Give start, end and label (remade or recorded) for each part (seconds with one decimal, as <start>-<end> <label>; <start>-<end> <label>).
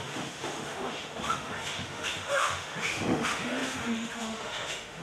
0.0-5.0 remade